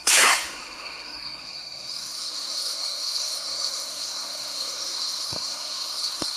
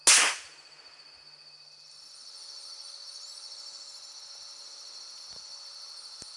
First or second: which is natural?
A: second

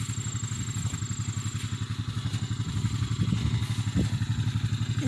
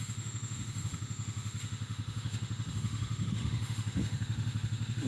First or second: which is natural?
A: first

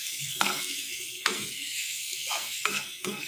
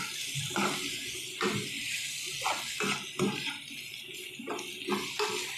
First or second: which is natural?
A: second